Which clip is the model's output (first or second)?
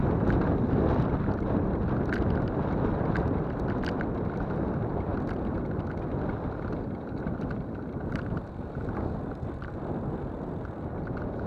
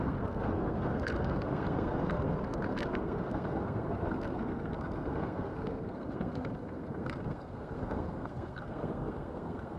second